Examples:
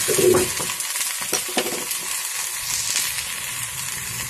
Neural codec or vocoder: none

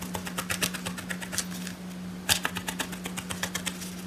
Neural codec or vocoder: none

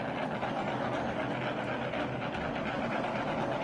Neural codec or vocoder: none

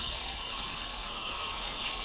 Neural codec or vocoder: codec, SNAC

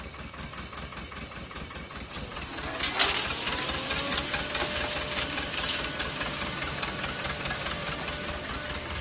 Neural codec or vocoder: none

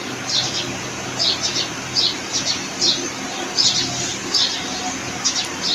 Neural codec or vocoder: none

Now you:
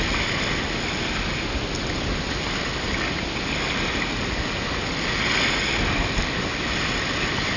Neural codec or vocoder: none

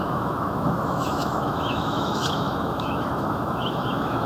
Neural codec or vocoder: autoencoder, DAC-VAE